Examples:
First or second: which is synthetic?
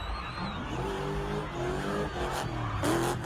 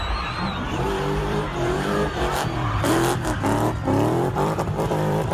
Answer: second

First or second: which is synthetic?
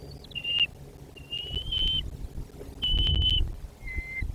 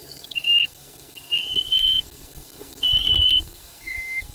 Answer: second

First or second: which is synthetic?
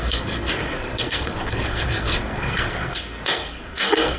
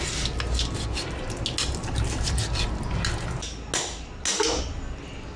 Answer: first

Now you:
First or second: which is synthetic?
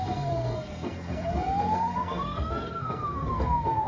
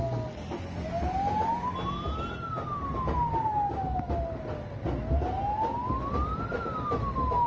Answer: first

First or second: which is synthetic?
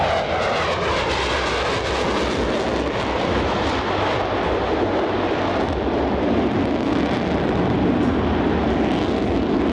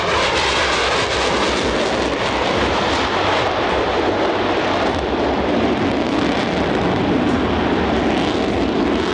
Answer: second